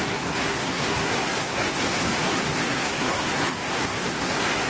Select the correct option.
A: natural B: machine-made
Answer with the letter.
B